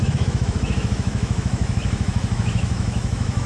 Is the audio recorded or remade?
remade